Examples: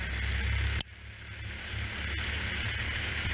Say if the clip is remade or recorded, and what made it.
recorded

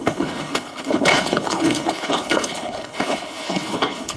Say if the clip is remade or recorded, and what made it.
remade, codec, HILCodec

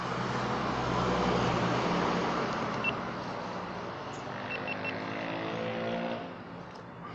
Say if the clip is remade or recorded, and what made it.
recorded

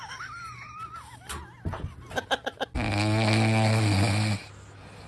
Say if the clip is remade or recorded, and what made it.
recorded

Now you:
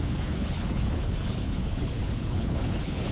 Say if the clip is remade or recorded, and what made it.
remade, codec, HILCodec